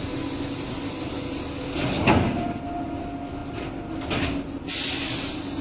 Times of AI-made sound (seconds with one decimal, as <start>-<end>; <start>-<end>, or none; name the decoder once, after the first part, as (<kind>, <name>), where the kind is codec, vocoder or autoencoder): none